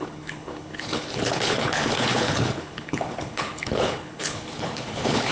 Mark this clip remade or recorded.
remade